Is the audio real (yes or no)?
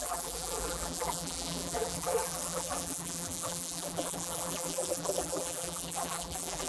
no